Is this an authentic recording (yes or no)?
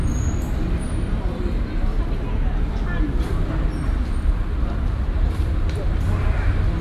yes